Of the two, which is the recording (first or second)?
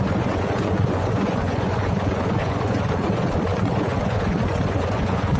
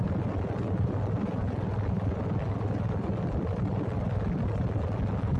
second